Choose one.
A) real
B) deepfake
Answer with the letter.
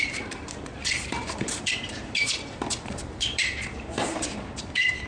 B